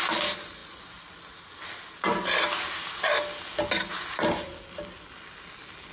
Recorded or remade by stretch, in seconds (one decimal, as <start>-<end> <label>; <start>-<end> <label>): 0.0-5.9 recorded